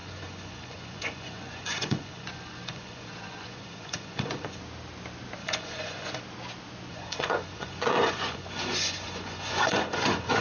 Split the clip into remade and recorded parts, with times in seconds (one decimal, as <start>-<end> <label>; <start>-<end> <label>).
0.0-4.6 remade; 4.6-5.4 recorded; 5.4-6.2 remade; 6.2-6.9 recorded; 6.9-10.4 remade